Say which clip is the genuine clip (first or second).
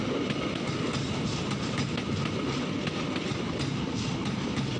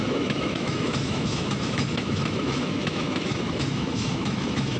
first